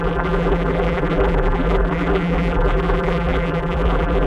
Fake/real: fake